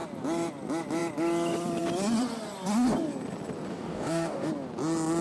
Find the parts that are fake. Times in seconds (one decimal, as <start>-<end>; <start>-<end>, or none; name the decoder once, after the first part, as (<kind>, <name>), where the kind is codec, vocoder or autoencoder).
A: 3.7-4.5 (codec, DAC)